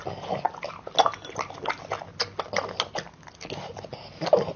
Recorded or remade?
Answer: recorded